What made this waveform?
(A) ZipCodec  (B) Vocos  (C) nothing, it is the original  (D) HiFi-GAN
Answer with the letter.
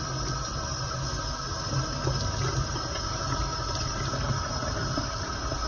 C